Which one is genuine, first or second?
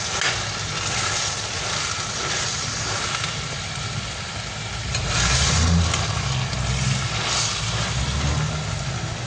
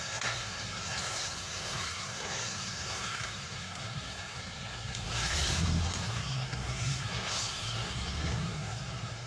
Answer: first